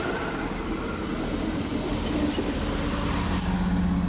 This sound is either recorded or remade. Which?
recorded